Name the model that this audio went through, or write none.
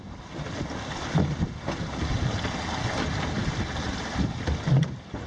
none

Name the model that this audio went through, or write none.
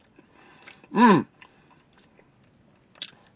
none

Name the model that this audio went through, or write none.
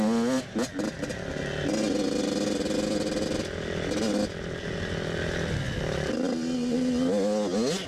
none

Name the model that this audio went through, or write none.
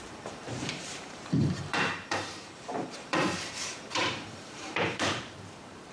vocoder, BigVGAN v2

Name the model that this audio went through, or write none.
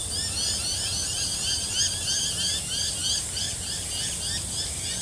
none